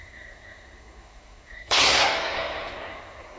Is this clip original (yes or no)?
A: no